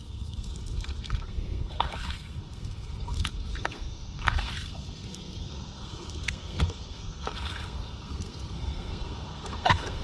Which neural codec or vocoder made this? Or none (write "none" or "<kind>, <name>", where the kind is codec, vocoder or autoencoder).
codec, SNAC